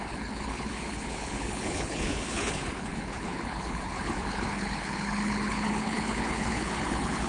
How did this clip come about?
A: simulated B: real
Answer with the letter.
A